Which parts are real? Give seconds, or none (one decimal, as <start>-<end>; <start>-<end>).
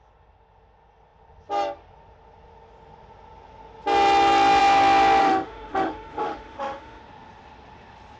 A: 0.0-5.2; 7.0-8.2